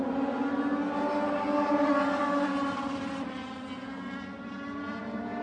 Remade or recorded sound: recorded